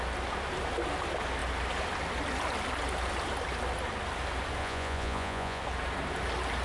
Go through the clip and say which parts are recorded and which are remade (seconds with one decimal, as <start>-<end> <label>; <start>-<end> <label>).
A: 0.0-4.6 recorded; 4.6-5.6 remade; 5.6-6.6 recorded